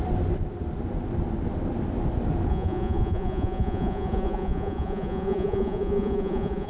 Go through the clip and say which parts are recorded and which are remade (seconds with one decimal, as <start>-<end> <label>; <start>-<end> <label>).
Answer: 0.0-2.5 recorded; 2.5-6.7 remade